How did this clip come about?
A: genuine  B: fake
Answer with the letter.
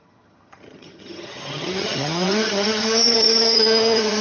B